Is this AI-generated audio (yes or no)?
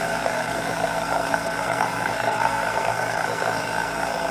yes